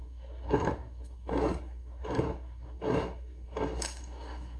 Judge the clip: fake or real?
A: fake